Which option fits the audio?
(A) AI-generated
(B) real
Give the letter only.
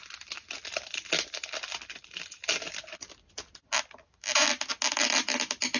B